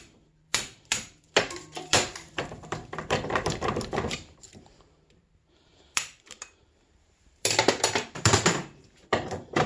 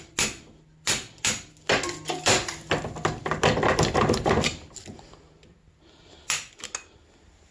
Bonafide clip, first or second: second